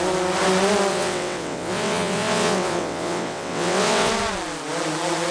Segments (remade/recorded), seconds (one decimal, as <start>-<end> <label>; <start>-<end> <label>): 0.0-0.9 recorded; 0.9-4.1 remade; 4.1-5.3 recorded